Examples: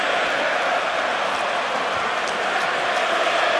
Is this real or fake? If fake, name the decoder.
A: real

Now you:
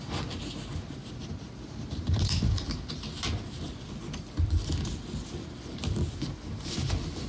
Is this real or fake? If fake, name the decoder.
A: real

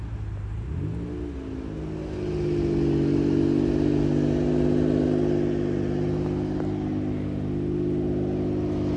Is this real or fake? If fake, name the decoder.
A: real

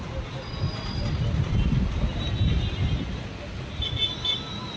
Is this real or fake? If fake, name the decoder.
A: real